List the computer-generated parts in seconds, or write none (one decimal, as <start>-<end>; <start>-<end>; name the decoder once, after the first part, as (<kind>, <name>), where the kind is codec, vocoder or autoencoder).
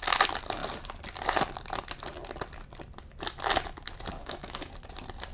4.2-4.7 (autoencoder, DAC-VAE)